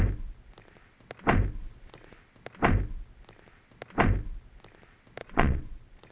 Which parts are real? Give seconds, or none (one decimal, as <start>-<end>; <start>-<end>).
0.0-1.6; 2.2-5.2